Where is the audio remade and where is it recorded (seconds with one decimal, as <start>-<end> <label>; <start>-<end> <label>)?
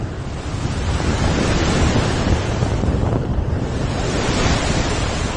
0.0-5.4 remade